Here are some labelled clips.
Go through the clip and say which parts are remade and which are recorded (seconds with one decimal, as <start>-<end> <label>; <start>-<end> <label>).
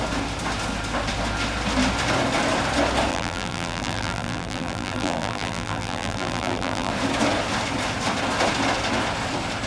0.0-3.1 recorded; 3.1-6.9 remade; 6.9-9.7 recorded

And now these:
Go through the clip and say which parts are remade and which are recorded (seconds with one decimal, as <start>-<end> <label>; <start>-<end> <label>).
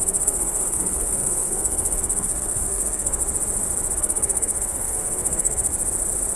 0.0-3.2 remade; 3.2-4.0 recorded; 4.0-5.7 remade; 5.7-6.4 recorded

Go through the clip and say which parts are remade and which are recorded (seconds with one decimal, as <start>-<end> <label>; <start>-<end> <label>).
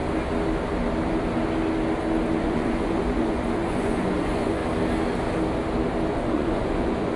0.0-2.4 recorded; 2.4-4.6 remade; 4.6-6.1 recorded; 6.1-7.2 remade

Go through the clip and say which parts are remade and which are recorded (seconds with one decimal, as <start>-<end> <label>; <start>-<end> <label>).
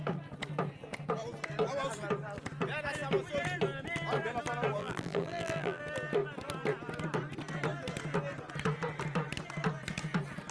0.0-4.8 recorded; 4.8-5.8 remade; 5.8-10.5 recorded